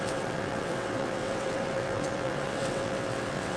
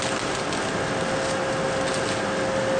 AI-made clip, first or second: first